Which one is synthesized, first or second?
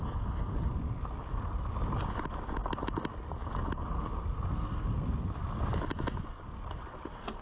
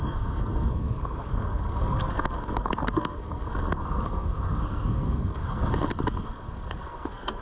second